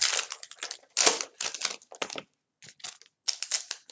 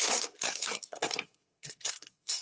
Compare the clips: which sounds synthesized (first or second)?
second